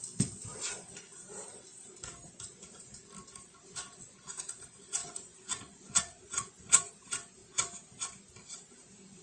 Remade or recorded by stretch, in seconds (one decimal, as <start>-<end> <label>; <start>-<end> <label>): 0.0-5.0 recorded; 5.0-6.9 remade; 6.9-9.2 recorded